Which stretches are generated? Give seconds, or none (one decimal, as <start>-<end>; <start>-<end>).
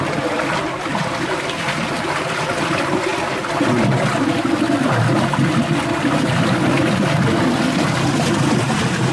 none